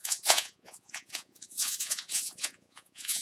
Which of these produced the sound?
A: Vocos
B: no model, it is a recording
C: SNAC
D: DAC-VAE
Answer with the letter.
A